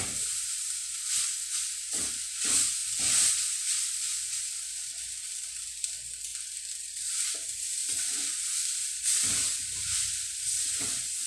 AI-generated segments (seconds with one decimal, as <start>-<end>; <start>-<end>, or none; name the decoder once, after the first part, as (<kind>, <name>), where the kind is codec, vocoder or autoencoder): 7.8-9.0 (vocoder, BigVGAN v2)